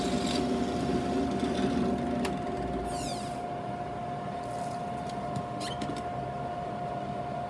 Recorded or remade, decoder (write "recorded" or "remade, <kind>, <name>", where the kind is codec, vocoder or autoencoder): recorded